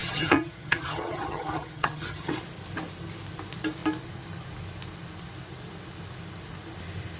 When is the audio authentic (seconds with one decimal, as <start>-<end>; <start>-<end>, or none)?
2.3-7.2